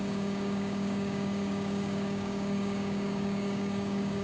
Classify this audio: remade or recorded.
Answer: remade